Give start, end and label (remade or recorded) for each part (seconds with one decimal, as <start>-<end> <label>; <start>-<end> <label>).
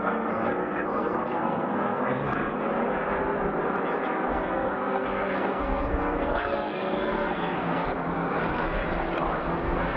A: 0.0-2.5 remade; 2.5-4.3 recorded; 4.3-8.8 remade; 8.8-9.4 recorded; 9.4-10.0 remade